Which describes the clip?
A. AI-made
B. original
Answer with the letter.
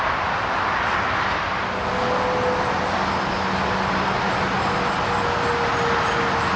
B